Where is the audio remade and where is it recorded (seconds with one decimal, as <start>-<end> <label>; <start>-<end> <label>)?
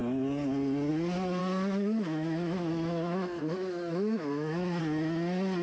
0.0-1.4 recorded; 1.4-4.8 remade; 4.8-5.6 recorded